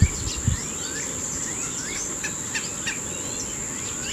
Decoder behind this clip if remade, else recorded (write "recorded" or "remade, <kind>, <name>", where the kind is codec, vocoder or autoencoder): recorded